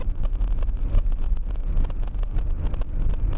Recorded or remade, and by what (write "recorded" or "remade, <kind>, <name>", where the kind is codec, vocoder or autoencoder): recorded